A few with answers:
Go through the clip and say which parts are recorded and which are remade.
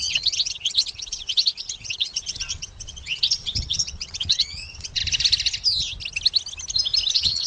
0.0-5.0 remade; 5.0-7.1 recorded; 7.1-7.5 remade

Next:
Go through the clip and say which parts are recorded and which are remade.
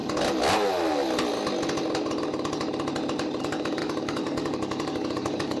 0.0-3.4 recorded; 3.4-5.6 remade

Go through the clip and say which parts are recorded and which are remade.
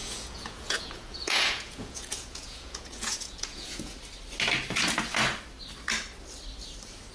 0.0-3.9 remade; 3.9-7.1 recorded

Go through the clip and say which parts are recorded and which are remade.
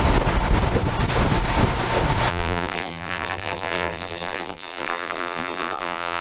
0.0-2.3 recorded; 2.3-6.2 remade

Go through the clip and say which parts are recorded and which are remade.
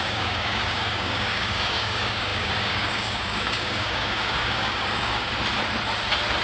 0.0-5.3 remade; 5.3-6.4 recorded